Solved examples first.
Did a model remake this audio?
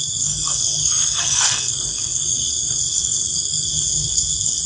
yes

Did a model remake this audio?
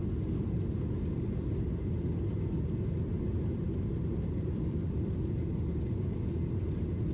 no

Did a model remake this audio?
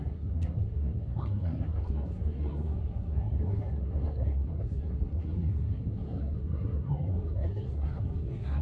yes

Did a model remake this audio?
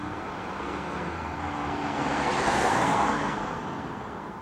yes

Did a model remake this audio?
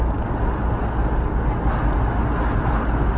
no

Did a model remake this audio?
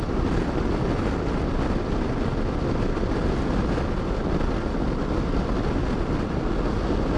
no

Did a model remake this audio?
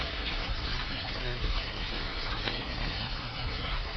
yes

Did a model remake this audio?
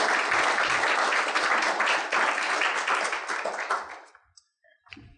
no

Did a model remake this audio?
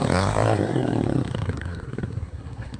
yes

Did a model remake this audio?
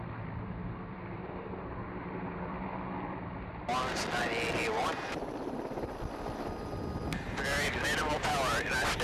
no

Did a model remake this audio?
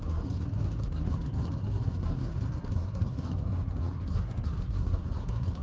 yes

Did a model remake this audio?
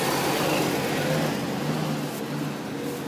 no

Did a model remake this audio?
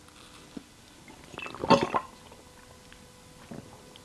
no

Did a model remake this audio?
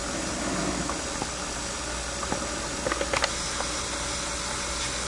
no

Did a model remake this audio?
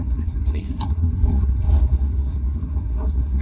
yes